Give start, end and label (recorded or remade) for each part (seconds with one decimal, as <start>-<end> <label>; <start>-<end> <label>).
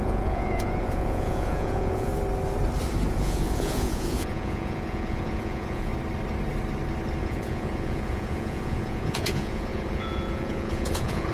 0.0-2.1 remade; 2.1-3.1 recorded; 3.1-5.9 remade; 5.9-7.2 recorded; 7.2-11.3 remade